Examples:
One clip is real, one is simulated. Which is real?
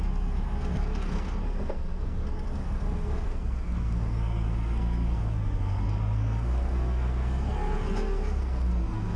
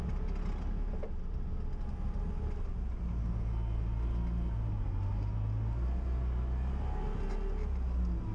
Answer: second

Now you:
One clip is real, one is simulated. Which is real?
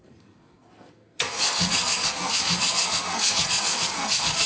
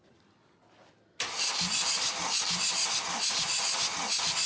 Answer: second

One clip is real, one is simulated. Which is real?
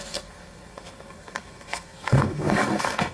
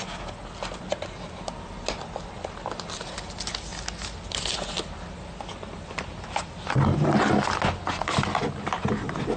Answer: second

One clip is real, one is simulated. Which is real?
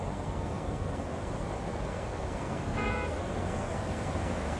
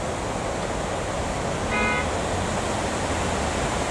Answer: second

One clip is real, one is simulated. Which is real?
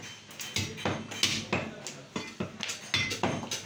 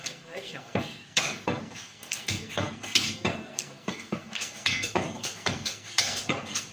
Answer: first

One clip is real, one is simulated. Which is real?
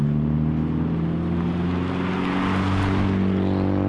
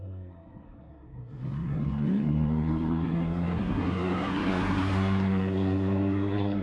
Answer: first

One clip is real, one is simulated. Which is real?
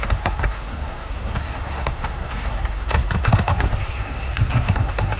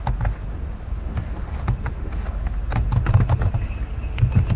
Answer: second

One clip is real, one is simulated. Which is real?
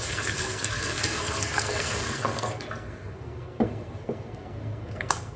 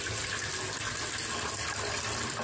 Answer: second